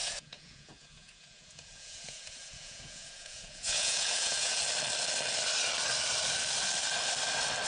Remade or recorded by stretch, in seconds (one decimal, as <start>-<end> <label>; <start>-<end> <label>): 0.0-4.6 remade; 4.6-7.7 recorded